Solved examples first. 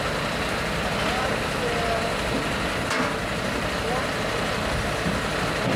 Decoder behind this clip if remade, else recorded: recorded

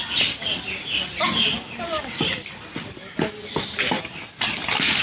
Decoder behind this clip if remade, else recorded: recorded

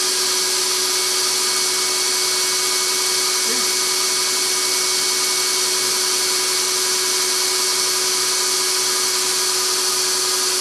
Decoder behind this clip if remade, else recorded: recorded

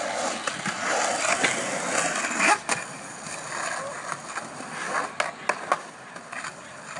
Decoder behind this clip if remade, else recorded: recorded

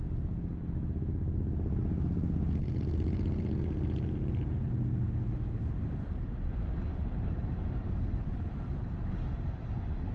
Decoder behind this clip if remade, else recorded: recorded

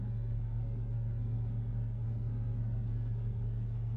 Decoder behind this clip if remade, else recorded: remade, codec, SNAC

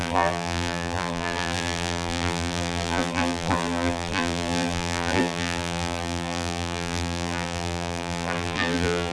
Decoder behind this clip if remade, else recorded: remade, vocoder, BigVGAN v2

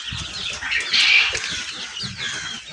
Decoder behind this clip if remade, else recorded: recorded